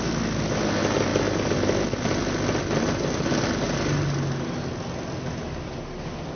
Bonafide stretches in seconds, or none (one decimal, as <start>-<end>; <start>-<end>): 0.0-6.3